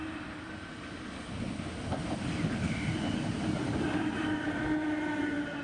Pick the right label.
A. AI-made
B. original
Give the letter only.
B